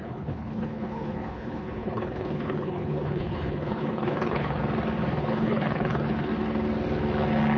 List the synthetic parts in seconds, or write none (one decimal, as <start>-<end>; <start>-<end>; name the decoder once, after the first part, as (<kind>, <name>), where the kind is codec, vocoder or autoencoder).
0.0-4.6 (codec, HILCodec); 5.2-6.3